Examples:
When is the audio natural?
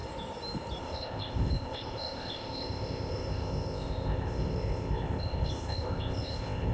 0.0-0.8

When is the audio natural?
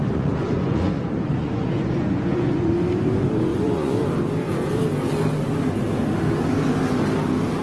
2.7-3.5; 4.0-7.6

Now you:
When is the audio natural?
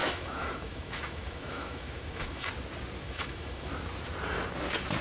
2.5-3.0; 3.7-5.0